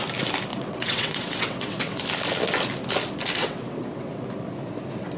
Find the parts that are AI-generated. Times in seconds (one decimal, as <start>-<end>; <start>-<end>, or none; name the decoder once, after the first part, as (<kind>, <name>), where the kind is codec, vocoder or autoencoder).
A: 0.5-2.0 (vocoder, WaveNeXt); 3.4-4.3